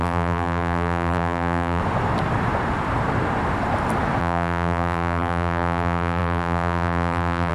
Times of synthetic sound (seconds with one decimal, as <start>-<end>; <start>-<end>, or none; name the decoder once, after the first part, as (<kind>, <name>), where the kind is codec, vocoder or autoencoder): 0.0-1.8 (vocoder, BigVGAN v2); 4.2-7.5